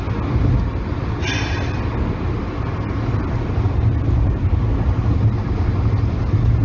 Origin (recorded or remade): recorded